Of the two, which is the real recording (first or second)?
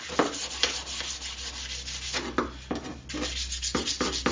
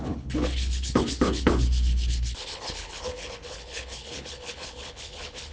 first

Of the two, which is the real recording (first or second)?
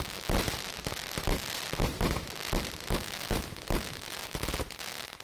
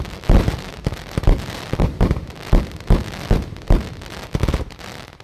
first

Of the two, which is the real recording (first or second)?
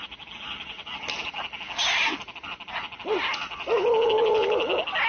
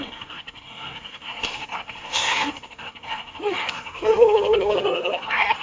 first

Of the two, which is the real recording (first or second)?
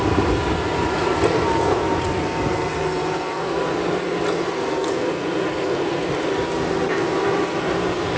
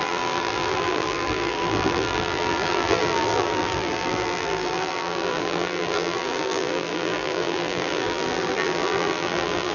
first